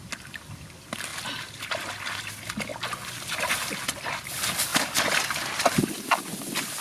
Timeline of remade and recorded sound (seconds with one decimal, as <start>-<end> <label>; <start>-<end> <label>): 0.0-6.8 recorded